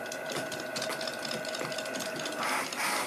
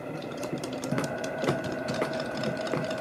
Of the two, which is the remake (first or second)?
second